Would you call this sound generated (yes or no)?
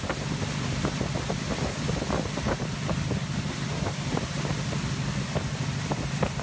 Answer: no